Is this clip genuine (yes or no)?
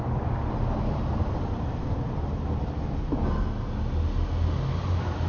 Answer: yes